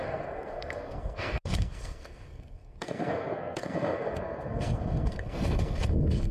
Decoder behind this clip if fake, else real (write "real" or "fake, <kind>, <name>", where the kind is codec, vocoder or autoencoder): fake, codec, SNAC